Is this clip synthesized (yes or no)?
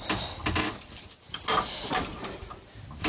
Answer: no